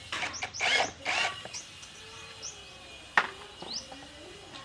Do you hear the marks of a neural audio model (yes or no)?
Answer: no